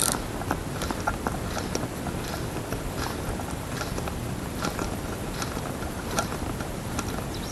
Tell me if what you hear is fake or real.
fake